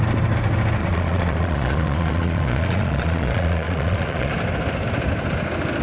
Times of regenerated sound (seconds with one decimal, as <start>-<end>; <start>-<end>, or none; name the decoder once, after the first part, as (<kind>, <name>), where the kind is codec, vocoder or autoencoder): 0.8-4.3 (vocoder, Vocos)